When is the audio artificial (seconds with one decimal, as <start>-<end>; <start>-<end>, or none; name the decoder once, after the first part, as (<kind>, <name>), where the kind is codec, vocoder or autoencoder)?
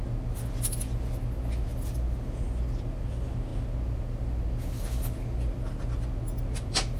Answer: none